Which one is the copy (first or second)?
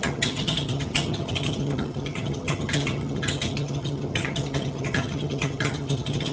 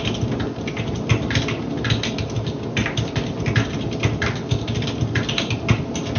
first